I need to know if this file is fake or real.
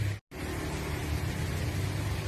real